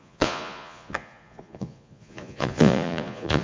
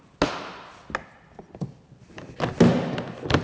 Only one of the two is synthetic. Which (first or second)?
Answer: first